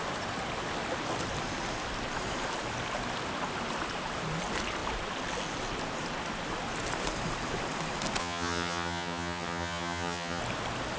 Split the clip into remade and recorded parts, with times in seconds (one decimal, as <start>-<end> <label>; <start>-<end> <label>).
0.0-8.2 recorded; 8.2-10.4 remade; 10.4-11.0 recorded